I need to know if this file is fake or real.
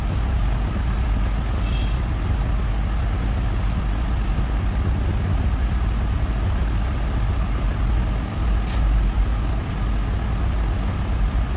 real